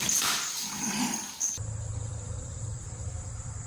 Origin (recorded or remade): remade